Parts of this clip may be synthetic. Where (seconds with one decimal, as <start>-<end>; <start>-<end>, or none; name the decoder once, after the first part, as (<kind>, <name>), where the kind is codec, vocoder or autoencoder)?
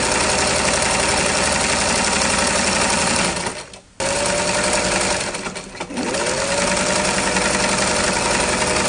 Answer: none